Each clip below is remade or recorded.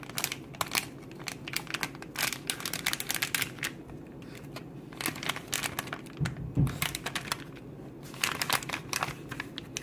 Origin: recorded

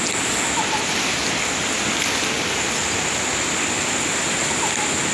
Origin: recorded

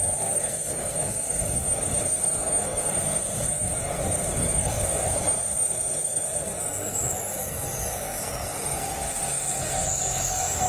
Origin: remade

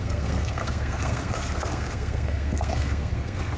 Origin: remade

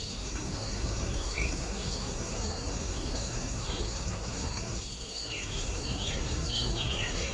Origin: remade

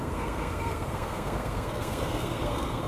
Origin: remade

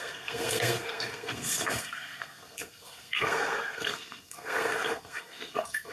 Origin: remade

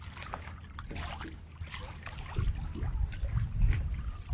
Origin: recorded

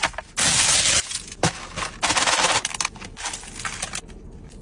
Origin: recorded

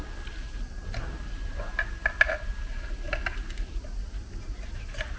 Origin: recorded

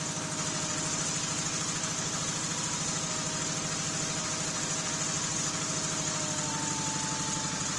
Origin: recorded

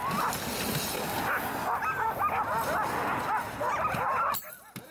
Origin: recorded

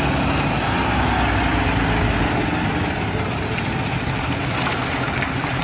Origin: recorded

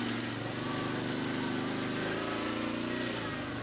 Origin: recorded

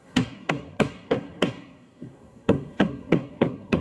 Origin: remade